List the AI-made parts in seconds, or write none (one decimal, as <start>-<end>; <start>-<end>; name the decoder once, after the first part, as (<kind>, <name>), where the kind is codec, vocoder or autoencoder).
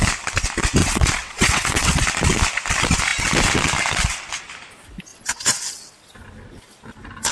0.8-2.0 (vocoder, WaveNeXt); 5.1-5.9